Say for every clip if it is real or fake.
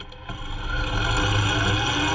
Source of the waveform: real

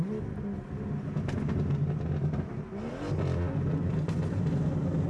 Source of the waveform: real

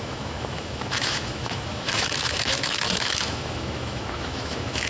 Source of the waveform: fake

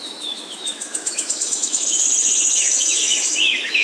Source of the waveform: fake